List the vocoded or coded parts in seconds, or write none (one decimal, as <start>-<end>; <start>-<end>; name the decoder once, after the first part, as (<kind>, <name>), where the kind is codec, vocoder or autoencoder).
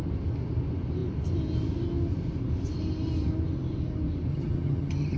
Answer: 4.3-5.2 (vocoder, HiFi-GAN)